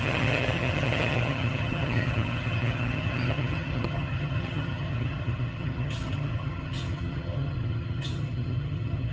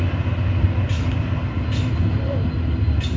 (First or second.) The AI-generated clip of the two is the first